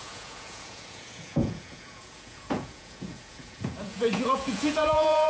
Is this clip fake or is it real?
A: fake